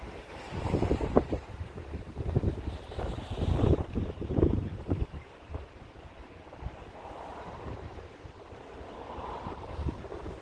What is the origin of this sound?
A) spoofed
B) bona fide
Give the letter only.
A